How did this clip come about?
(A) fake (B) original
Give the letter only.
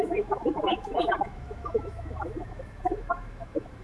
A